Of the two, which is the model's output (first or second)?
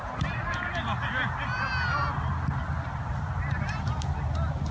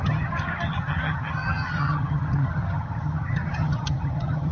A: second